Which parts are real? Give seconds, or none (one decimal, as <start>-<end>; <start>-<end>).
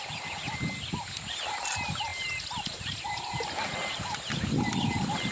0.0-5.3